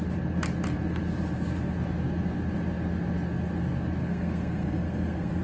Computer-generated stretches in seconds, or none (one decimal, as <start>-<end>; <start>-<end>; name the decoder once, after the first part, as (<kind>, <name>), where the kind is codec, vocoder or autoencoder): 4.0-5.4 (codec, SNAC)